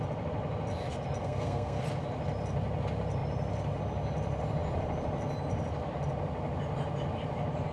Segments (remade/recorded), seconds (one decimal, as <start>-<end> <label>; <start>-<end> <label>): 0.0-1.2 recorded; 1.2-1.8 remade; 1.8-7.7 recorded